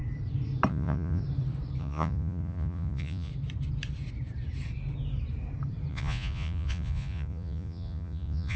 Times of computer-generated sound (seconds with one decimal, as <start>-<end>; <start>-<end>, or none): 0.7-1.2; 1.8-3.3; 5.9-8.6